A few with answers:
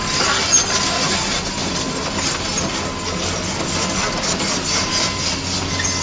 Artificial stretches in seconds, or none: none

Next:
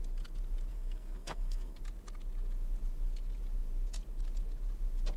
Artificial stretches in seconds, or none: 0.7-1.8 (codec, SNAC)

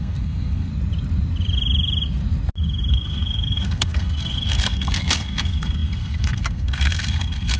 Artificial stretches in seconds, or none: 0.0-0.7 (codec, SNAC); 2.9-7.6

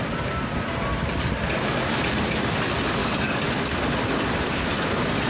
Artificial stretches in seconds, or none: 3.0-4.0 (codec, DAC)

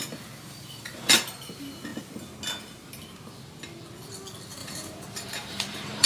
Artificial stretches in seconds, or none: 4.6-6.1 (vocoder, BigVGAN v2)

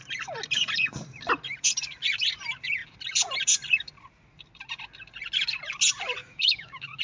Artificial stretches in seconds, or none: 6.2-7.0 (autoencoder, DAC-VAE)